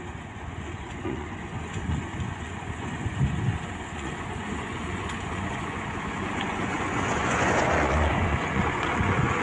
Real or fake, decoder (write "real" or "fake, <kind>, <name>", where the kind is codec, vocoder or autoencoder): fake, vocoder, Vocos